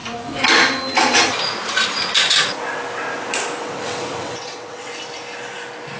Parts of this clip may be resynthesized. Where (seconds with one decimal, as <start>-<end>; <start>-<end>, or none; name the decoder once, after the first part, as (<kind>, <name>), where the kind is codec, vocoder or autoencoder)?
3.6-4.9 (vocoder, WaveNeXt)

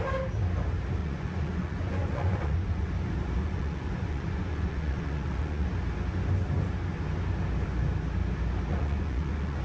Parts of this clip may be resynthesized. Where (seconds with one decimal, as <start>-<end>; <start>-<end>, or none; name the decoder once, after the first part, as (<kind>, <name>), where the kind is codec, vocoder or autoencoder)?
1.0-2.9 (vocoder, Vocos); 3.4-5.7; 8.7-9.6